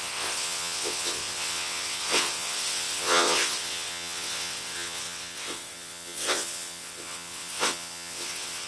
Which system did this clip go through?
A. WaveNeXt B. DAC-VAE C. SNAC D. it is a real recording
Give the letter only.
A